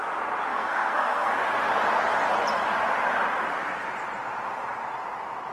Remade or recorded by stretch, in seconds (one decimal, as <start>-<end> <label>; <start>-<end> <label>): 0.0-0.5 recorded; 0.5-1.3 remade; 1.3-5.5 recorded